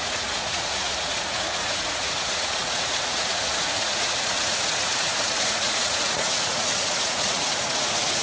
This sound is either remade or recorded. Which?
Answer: remade